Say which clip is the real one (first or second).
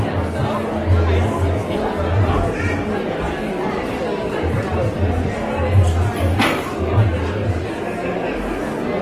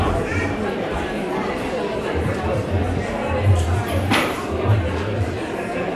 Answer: first